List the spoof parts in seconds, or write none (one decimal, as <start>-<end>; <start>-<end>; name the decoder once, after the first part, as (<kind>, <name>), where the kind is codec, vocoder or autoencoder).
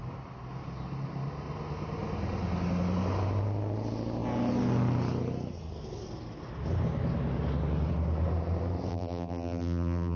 8.9-10.2 (vocoder, BigVGAN v2)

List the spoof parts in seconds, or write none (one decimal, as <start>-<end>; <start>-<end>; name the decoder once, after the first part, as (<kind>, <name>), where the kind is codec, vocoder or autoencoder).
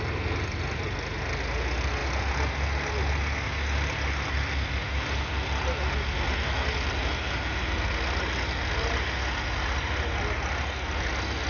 none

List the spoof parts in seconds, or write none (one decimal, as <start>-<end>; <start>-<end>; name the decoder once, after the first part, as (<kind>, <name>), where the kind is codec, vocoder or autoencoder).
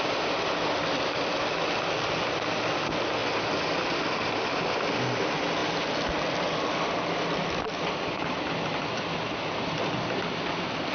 none